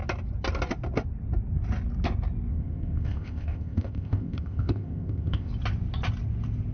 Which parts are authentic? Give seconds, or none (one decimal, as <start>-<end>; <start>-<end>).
0.0-2.5; 5.5-6.7